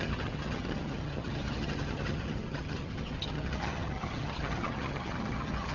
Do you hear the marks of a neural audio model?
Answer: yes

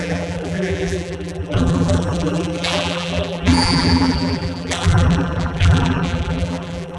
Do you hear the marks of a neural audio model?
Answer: yes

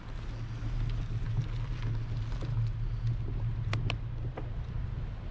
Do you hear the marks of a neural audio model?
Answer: no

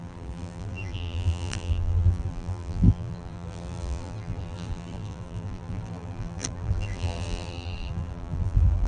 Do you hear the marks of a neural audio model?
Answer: yes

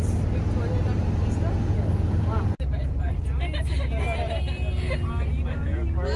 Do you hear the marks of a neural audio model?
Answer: no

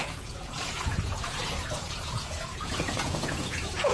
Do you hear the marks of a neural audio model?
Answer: yes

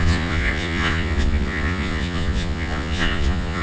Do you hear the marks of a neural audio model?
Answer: yes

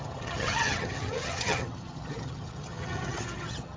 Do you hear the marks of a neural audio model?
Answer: yes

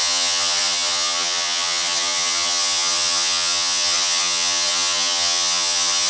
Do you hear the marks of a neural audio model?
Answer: yes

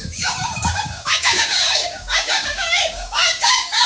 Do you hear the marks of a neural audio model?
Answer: yes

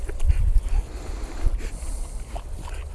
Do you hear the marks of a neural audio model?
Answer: no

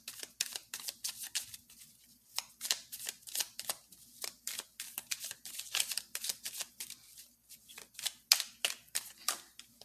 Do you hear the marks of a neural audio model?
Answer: no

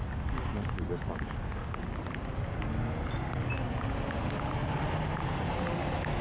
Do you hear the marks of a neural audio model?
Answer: no